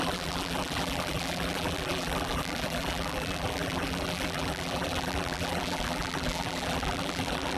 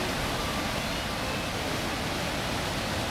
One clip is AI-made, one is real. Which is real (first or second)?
second